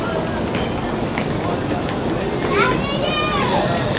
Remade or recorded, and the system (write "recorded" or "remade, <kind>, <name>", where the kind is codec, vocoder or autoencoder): recorded